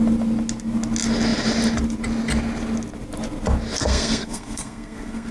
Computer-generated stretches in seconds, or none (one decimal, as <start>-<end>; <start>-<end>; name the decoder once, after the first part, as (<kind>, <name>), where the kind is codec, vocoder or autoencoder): 3.8-5.3 (codec, SNAC)